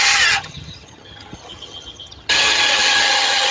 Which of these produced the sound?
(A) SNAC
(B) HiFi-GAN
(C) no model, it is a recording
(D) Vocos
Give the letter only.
B